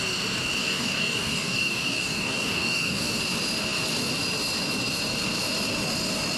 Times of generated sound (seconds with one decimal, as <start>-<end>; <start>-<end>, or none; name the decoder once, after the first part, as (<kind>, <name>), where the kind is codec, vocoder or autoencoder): 0.6-3.2 (codec, DAC)